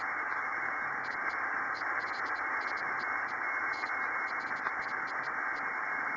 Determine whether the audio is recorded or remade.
recorded